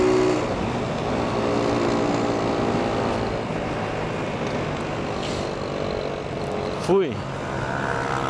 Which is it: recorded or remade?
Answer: recorded